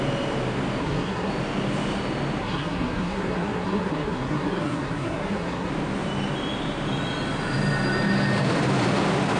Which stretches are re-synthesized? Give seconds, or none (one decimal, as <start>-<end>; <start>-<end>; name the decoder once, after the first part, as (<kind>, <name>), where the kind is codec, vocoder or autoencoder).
0.8-1.3 (codec, SNAC); 2.4-5.7